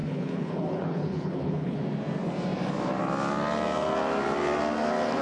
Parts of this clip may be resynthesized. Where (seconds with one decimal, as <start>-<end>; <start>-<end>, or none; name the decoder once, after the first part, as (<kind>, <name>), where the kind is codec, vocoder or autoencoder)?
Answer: 0.0-1.8 (codec, HILCodec)